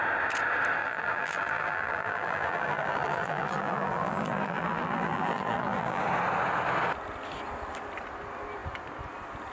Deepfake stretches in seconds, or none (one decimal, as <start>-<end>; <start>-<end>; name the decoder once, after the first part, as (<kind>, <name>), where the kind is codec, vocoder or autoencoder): 0.8-6.0 (vocoder, BigVGAN v2)